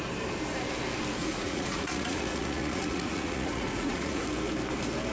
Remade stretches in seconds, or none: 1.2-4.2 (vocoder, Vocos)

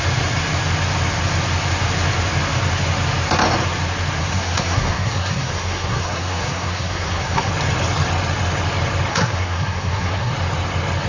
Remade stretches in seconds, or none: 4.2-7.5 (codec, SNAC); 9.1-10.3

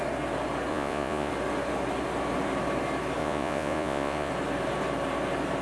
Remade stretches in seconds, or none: 0.7-1.3 (vocoder, Vocos); 3.2-4.3

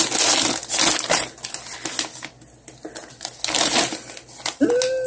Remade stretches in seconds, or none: none

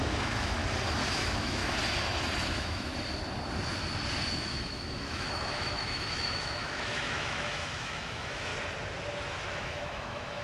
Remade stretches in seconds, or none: 0.0-0.6 (autoencoder, DAC-VAE); 1.1-1.6; 2.4-2.9; 4.3-8.5; 9.5-10.4